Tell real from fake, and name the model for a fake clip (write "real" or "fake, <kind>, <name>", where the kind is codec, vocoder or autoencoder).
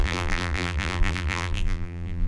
fake, vocoder, BigVGAN v2